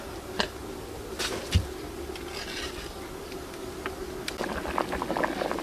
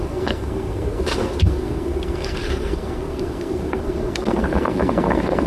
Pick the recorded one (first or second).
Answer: first